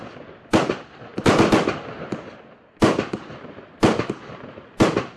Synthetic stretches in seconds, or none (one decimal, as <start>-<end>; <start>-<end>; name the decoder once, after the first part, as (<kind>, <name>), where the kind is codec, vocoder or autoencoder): none